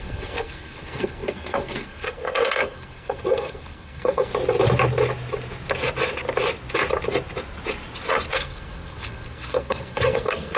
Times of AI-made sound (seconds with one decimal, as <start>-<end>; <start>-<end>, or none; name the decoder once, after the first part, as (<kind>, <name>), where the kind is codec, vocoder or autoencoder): 0.0-4.3 (codec, SNAC); 8.3-10.6